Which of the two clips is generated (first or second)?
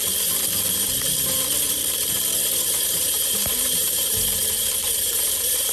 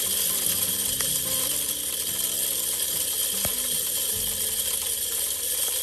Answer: first